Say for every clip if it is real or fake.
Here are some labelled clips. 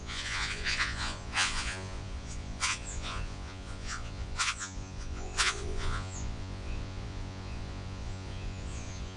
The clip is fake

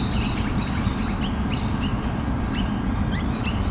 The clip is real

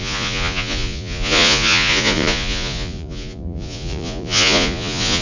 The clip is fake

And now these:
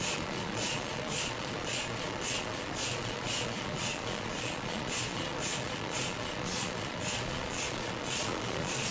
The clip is fake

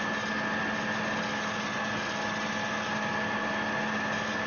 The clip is real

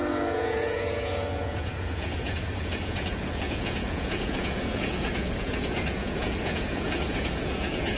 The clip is fake